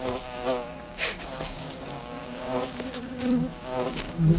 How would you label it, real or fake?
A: fake